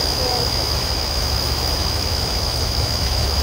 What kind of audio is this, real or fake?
fake